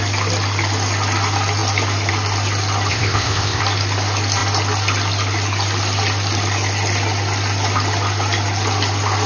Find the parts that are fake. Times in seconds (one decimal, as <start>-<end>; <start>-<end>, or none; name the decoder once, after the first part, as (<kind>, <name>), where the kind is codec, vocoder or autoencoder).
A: 2.9-3.6 (codec, ZipCodec)